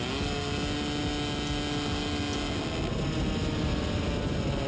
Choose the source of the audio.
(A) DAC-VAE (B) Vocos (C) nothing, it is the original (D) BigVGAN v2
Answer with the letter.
C